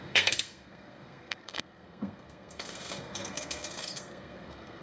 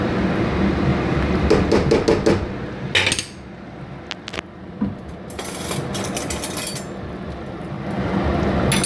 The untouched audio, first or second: second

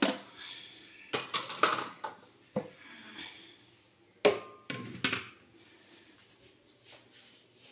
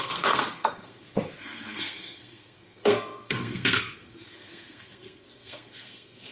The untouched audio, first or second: first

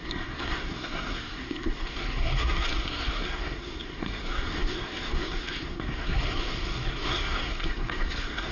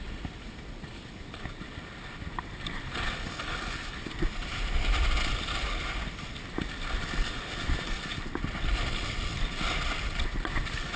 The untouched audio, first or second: second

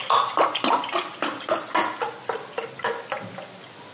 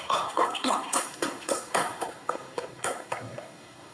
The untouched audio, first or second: first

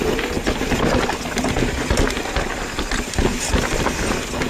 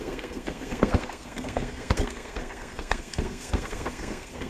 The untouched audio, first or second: first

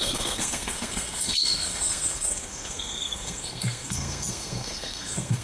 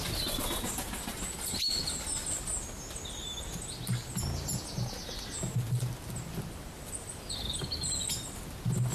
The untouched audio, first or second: second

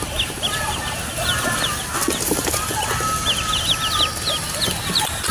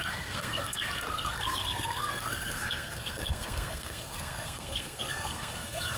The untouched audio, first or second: first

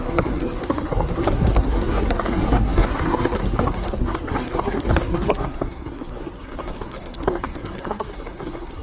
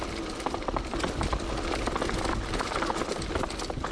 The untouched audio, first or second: second